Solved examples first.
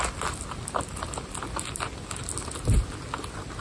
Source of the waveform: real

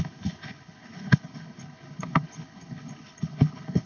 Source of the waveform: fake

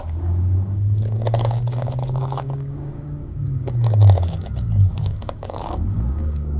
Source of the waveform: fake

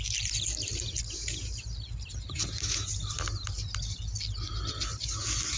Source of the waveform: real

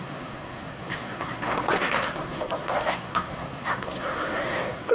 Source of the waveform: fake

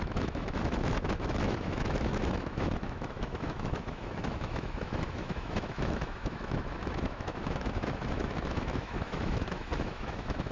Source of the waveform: fake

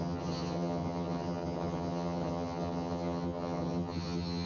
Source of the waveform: fake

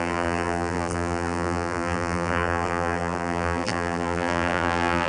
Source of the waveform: fake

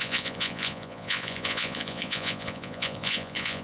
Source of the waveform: fake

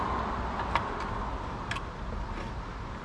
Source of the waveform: real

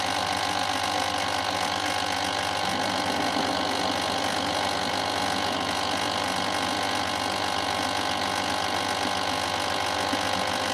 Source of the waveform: real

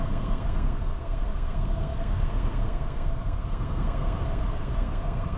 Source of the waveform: fake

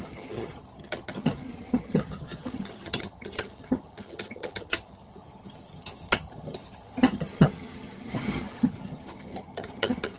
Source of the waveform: fake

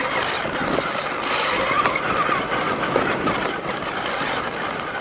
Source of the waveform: real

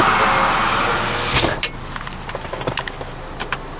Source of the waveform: real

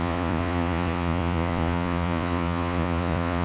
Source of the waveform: fake